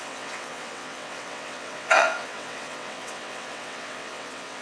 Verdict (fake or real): fake